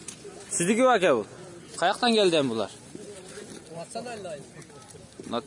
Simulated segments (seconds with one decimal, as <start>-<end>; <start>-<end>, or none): none